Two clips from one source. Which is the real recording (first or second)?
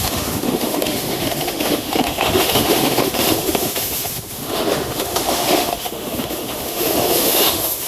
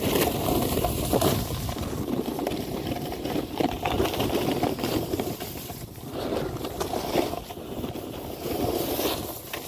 second